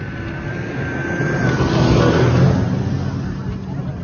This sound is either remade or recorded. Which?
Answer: recorded